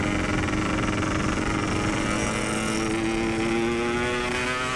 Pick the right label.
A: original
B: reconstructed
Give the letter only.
A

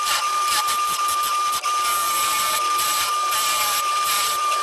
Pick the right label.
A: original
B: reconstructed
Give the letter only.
B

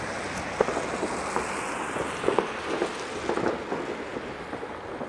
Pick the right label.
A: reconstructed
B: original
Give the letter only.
B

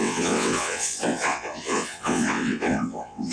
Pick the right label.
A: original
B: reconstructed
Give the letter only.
B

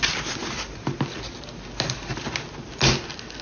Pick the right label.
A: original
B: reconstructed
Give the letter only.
A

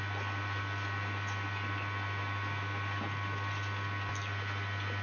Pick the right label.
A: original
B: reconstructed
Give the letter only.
A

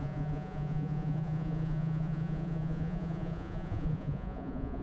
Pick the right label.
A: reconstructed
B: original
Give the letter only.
A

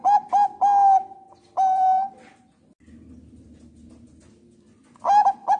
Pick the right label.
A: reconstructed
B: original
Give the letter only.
B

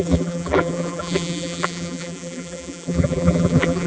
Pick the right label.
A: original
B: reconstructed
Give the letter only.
B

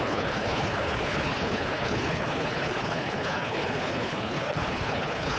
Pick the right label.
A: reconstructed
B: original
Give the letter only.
A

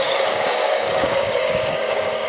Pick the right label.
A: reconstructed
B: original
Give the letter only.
A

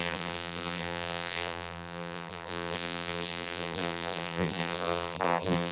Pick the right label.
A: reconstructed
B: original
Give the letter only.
A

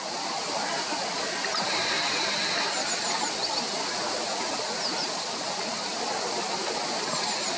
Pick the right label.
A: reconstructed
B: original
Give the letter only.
B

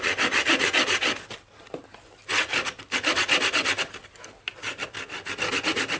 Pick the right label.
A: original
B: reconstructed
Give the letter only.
A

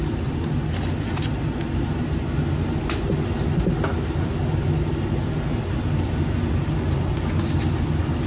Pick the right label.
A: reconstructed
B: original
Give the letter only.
B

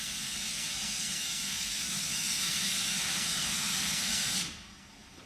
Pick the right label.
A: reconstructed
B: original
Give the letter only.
A